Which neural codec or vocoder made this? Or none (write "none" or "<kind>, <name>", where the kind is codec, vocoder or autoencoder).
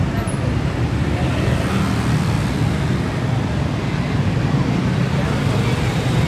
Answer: none